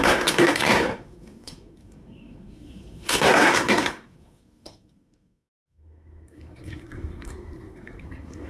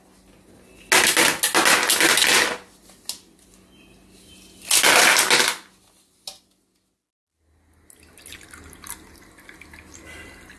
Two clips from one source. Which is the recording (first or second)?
second